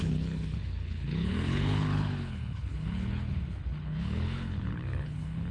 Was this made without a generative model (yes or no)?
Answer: no